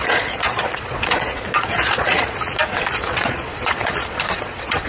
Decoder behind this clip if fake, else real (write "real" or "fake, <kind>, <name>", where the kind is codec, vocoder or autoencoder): fake, vocoder, Vocos